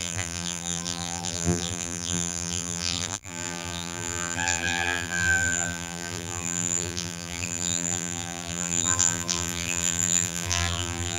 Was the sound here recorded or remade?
remade